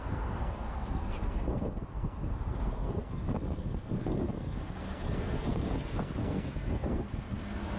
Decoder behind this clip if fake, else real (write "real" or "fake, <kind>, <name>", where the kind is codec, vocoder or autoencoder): fake, codec, SNAC